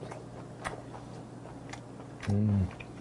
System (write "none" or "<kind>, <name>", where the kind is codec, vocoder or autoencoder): none